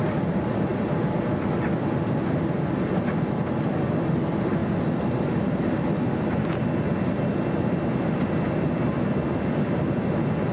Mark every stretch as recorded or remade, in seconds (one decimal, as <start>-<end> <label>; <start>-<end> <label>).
0.0-4.6 recorded; 4.6-5.8 remade; 5.8-10.5 recorded